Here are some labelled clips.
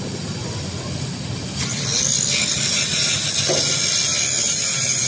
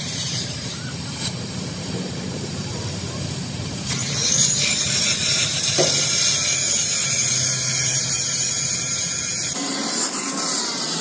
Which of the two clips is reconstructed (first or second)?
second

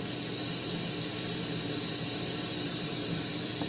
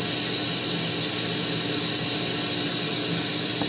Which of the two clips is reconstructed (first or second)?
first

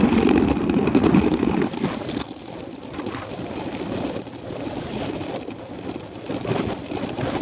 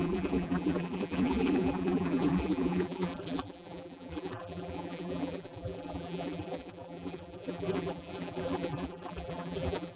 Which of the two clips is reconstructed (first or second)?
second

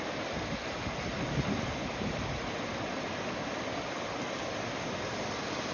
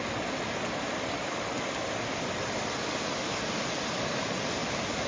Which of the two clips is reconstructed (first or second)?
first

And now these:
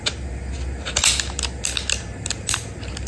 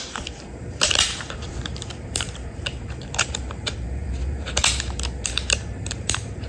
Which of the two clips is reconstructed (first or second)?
second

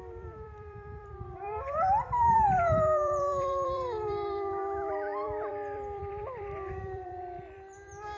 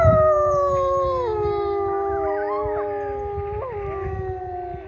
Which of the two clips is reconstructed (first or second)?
first